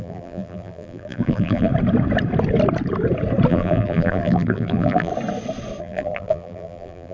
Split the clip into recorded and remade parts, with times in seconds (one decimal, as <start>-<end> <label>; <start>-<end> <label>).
0.0-1.7 remade; 1.7-3.5 recorded; 3.5-5.1 remade; 5.1-5.8 recorded; 5.8-7.1 remade